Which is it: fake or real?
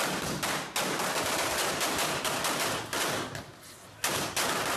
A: real